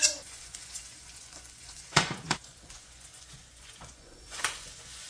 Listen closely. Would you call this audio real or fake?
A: fake